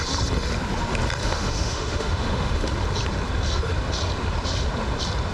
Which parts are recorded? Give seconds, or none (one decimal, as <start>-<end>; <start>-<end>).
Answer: 0.0-1.2; 2.7-5.3